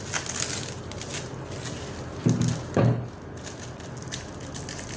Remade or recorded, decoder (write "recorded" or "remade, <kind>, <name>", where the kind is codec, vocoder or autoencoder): recorded